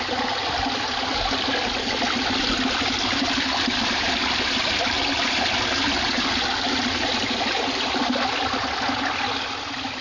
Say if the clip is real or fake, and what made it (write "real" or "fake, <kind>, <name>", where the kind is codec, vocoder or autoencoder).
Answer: real